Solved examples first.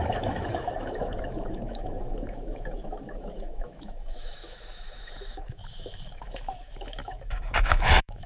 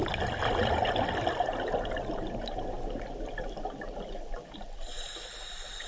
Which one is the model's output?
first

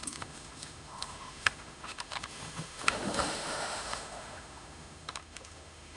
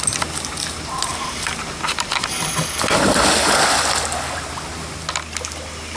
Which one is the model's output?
first